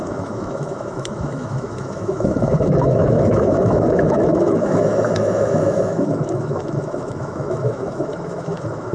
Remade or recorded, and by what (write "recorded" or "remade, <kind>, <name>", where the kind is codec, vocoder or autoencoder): remade, autoencoder, DAC-VAE